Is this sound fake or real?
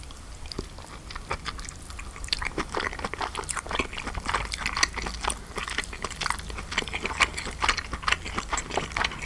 real